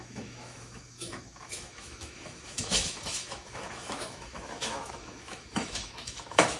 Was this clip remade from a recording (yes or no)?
yes